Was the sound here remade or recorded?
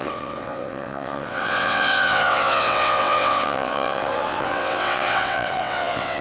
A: remade